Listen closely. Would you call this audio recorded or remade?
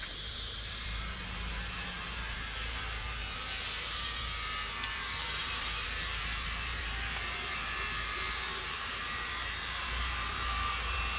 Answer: remade